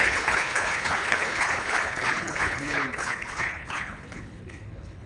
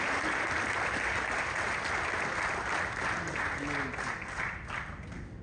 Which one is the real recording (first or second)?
second